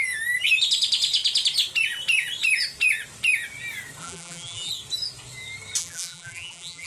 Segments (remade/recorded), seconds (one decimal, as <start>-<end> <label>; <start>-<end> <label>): 0.0-4.0 recorded; 4.0-4.7 remade; 4.7-5.8 recorded; 5.8-6.9 remade